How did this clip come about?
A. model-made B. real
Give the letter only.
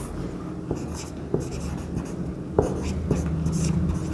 B